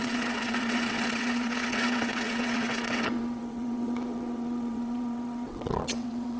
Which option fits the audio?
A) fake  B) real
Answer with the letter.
A